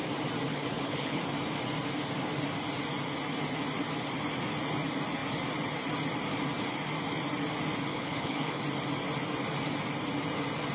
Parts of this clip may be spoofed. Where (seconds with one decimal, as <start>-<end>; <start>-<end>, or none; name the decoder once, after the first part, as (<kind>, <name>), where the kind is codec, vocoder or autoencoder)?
0.5-1.2 (codec, HILCodec); 7.9-8.6